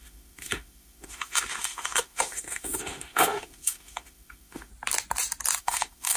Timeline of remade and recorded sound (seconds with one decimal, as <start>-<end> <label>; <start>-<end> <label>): 0.0-4.7 remade; 4.7-5.6 recorded; 5.6-6.2 remade